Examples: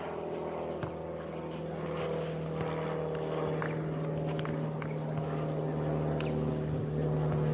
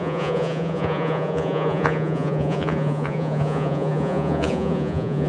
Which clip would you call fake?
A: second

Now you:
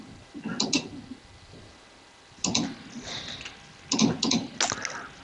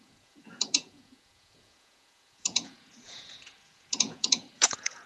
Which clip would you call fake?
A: second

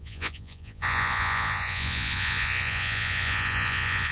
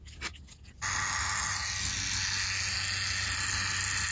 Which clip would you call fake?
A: first